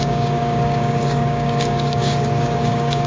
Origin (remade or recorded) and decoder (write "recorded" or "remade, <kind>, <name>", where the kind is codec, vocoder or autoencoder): remade, codec, DAC